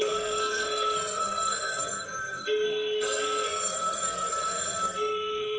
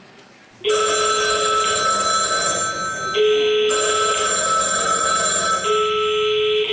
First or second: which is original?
second